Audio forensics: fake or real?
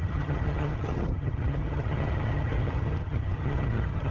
fake